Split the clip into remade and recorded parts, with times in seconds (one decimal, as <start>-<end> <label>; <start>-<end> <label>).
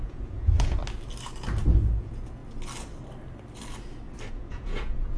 0.0-0.8 remade; 0.8-1.9 recorded; 1.9-2.4 remade; 2.4-4.3 recorded; 4.3-5.2 remade